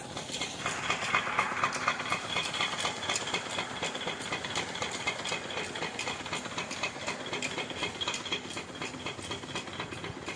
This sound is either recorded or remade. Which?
recorded